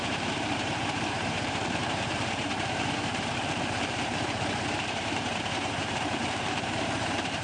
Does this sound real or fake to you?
fake